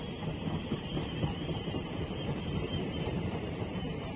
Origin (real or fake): fake